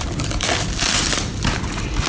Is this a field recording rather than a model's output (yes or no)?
yes